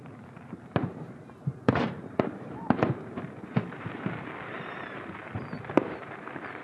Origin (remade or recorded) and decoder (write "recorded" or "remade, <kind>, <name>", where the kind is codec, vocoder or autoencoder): remade, vocoder, BigVGAN v2